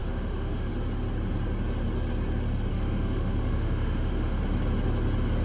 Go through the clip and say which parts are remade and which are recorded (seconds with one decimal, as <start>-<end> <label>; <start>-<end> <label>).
0.0-0.7 remade; 0.7-2.7 recorded; 2.7-4.4 remade; 4.4-5.4 recorded